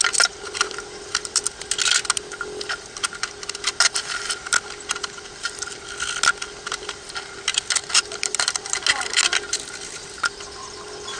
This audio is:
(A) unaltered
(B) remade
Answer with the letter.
A